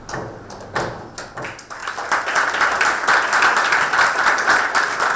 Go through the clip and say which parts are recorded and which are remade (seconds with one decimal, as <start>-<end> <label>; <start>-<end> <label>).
0.0-5.2 recorded